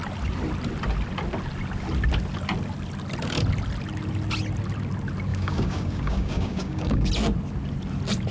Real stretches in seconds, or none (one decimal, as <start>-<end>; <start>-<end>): 0.0-5.3; 7.1-8.3